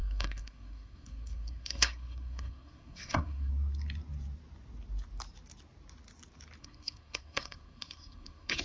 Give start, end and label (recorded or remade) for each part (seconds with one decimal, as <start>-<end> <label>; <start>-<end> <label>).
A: 0.0-3.5 remade; 3.5-6.6 recorded; 6.6-8.6 remade